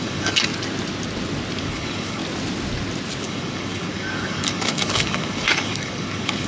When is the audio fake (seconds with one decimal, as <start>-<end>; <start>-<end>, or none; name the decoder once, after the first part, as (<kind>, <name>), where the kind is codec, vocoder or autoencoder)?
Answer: 0.0-0.5 (codec, DAC); 1.6-2.2; 3.2-6.5